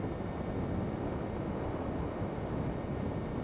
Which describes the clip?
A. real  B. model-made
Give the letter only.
A